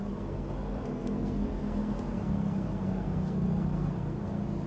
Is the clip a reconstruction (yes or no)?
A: yes